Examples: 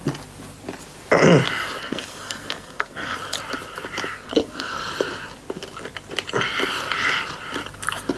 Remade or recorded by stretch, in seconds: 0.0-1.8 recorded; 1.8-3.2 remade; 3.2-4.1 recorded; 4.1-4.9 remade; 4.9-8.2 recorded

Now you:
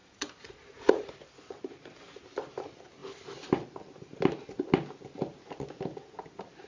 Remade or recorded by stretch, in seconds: 0.0-1.1 remade; 1.1-6.7 recorded

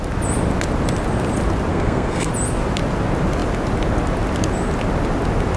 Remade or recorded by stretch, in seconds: 0.0-1.7 recorded; 1.7-2.3 remade; 2.3-5.6 recorded

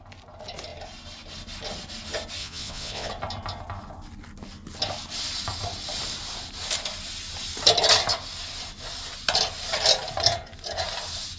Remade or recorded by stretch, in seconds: 0.0-2.4 recorded; 2.4-3.1 remade; 3.1-11.4 recorded